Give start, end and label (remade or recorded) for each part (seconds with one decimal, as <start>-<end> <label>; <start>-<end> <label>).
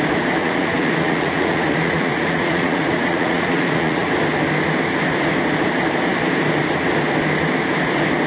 0.0-0.4 recorded; 0.4-4.1 remade; 4.1-8.3 recorded